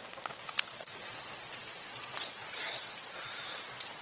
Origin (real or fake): fake